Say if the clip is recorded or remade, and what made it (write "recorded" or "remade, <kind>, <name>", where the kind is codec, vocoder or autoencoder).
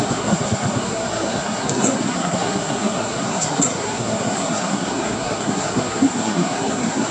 remade, codec, SNAC